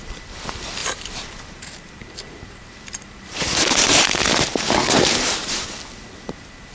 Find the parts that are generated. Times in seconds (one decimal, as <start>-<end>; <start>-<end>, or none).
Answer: 0.8-4.2